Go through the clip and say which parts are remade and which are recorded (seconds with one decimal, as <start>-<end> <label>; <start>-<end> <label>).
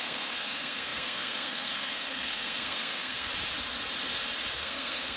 0.0-3.3 remade; 3.3-4.5 recorded; 4.5-5.2 remade